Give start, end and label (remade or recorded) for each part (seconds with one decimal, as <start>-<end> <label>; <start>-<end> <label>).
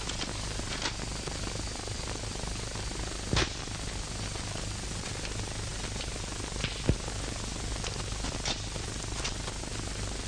0.0-10.3 recorded